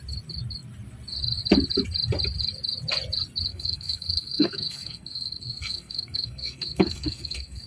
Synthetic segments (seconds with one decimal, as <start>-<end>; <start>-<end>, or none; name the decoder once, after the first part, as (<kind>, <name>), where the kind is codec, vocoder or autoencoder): 3.5-7.7 (codec, SNAC)